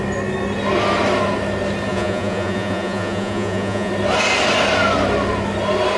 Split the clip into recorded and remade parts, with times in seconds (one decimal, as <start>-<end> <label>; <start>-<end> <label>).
0.0-1.9 recorded; 1.9-3.9 remade; 3.9-6.0 recorded